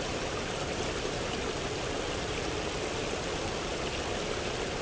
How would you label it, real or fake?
real